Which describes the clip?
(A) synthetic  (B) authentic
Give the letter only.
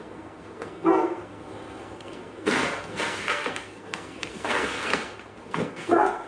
A